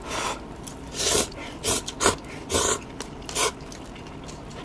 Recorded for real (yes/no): yes